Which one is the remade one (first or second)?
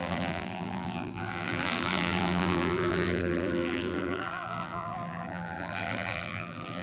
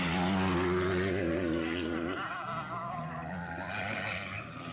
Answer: first